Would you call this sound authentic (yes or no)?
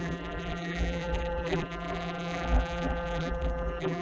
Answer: no